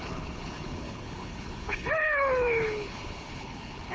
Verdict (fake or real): fake